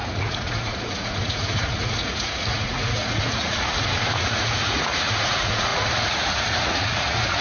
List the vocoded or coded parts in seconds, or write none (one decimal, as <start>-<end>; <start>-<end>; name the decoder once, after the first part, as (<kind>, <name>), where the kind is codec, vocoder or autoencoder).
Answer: 0.0-7.4 (vocoder, Vocos)